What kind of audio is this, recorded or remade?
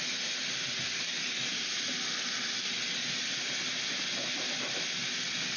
recorded